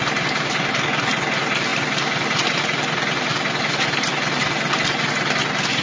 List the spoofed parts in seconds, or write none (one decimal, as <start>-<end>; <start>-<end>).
none